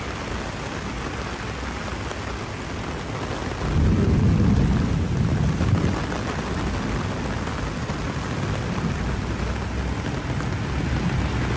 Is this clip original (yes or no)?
yes